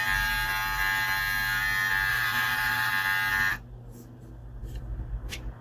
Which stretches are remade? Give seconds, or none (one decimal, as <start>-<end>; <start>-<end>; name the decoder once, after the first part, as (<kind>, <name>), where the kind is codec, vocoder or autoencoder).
2.1-2.9 (vocoder, BigVGAN v2); 4.4-5.6